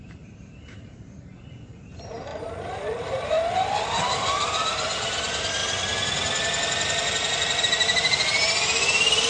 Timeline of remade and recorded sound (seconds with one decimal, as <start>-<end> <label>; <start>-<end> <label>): 0.0-5.6 remade; 5.6-7.6 recorded; 7.6-9.3 remade